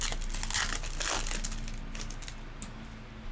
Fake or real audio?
real